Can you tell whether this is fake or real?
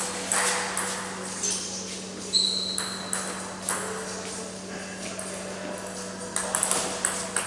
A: real